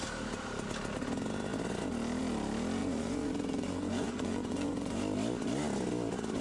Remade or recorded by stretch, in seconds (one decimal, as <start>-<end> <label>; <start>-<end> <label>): 0.0-2.8 recorded; 2.8-5.0 remade; 5.0-6.4 recorded